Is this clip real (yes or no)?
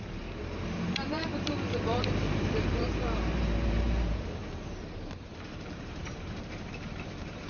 no